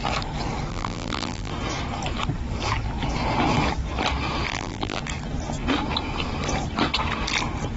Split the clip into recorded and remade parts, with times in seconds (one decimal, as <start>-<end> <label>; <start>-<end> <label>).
0.0-0.7 recorded; 0.7-1.5 remade; 1.5-4.5 recorded; 4.5-5.0 remade; 5.0-7.8 recorded

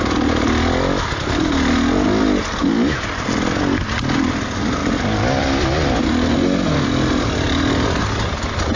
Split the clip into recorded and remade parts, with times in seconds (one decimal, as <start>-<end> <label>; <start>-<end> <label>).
0.0-8.8 recorded

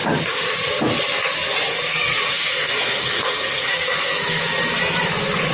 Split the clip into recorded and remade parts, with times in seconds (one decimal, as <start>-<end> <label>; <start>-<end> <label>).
0.0-1.7 recorded; 1.7-4.4 remade; 4.4-5.5 recorded

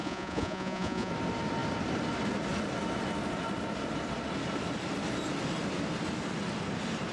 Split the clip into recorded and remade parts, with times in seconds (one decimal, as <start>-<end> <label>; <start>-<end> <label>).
0.0-1.1 remade; 1.1-7.1 recorded

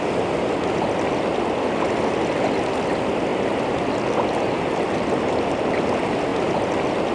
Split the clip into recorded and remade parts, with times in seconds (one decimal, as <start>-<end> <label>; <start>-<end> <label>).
0.0-7.1 recorded

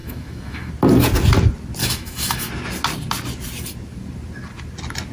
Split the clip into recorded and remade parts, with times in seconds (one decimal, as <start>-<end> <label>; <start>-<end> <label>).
0.0-0.7 remade; 0.7-1.8 recorded; 1.8-2.5 remade; 2.5-5.1 recorded

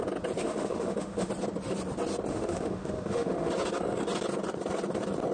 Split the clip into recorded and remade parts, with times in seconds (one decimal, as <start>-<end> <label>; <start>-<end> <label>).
0.0-0.4 recorded; 0.4-1.3 remade; 1.3-2.3 recorded; 2.3-3.5 remade; 3.5-5.3 recorded